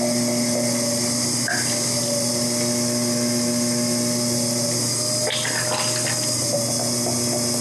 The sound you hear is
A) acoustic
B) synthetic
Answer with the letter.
A